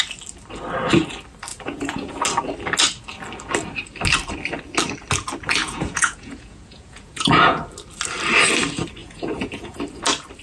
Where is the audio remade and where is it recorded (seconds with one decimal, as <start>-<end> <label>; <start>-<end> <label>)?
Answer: 0.0-1.5 recorded; 1.5-2.1 remade; 2.1-5.6 recorded; 5.6-7.6 remade; 7.6-9.0 recorded; 9.0-9.8 remade; 9.8-10.4 recorded